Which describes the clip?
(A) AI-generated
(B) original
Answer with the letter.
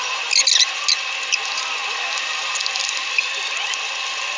B